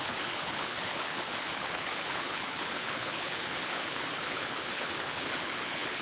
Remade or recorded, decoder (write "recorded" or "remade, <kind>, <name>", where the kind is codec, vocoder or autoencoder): remade, codec, HILCodec